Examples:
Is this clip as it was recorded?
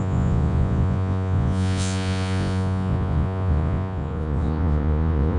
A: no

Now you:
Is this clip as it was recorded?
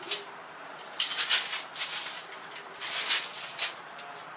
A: yes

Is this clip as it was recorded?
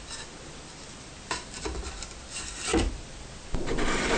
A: yes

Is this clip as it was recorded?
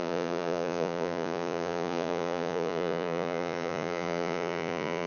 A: no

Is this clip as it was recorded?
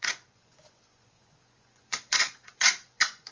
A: no